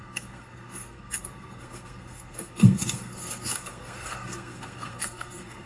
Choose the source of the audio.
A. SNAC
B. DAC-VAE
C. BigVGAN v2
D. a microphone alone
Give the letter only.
A